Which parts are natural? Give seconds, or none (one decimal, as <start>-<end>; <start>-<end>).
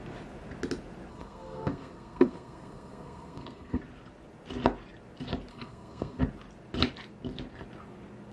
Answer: 0.0-1.1; 3.8-5.5; 6.2-8.3